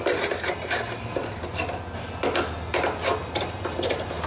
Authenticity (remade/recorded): recorded